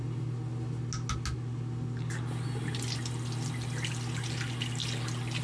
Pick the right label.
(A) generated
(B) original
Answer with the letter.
B